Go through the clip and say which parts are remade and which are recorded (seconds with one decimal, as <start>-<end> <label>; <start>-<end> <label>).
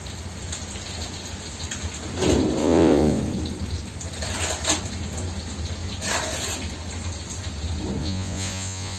0.0-2.6 recorded; 2.6-3.2 remade; 3.2-8.0 recorded; 8.0-9.0 remade